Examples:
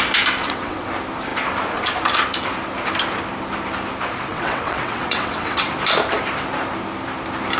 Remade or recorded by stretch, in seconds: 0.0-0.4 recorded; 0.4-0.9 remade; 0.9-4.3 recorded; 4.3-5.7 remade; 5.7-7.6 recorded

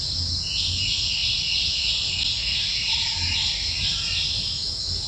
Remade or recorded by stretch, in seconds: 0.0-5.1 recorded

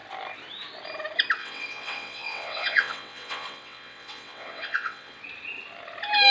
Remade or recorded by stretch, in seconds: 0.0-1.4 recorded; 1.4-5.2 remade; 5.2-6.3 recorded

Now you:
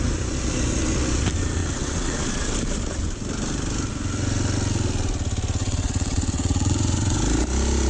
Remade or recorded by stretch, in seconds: 0.0-1.6 recorded; 1.6-2.2 remade; 2.2-5.6 recorded; 5.6-7.2 remade; 7.2-7.9 recorded

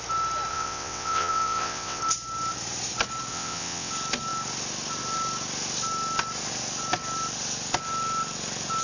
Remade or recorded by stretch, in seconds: 0.0-0.5 recorded; 0.5-2.0 remade; 2.0-3.3 recorded; 3.3-3.9 remade; 3.9-8.8 recorded

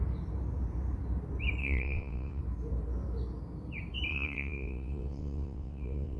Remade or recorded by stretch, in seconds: 0.0-1.6 recorded; 1.6-2.4 remade; 2.4-4.1 recorded; 4.1-6.2 remade

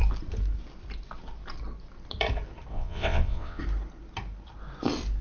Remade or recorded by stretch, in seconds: 0.0-2.7 recorded; 2.7-3.6 remade; 3.6-5.2 recorded